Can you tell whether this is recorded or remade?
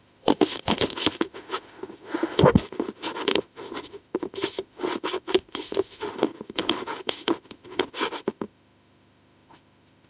remade